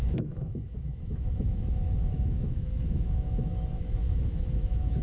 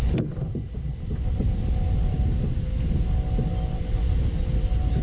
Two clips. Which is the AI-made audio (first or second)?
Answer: first